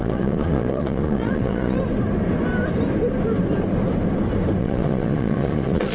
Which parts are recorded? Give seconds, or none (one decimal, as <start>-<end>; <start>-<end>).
1.8-4.6